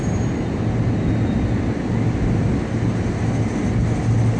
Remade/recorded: recorded